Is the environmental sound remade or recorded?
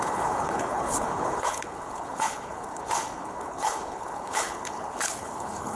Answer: remade